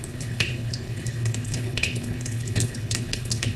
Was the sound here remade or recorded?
remade